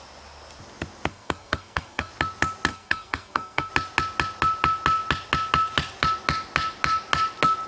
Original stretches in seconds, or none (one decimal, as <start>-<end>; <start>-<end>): 0.0-1.1; 2.1-2.7; 3.7-7.7